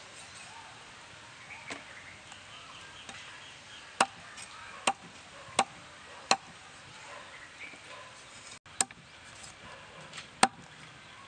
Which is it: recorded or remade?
recorded